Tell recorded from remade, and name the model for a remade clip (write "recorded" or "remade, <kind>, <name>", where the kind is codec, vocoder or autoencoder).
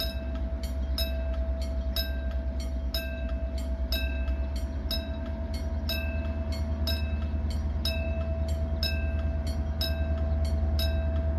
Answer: recorded